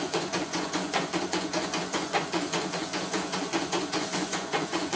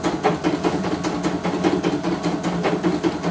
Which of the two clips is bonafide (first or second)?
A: second